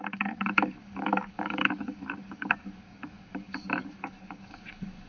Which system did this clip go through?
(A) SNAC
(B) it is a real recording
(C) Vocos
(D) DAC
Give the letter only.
D